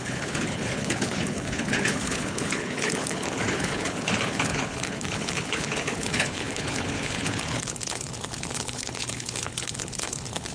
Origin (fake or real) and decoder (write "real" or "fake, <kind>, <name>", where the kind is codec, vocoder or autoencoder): fake, codec, HILCodec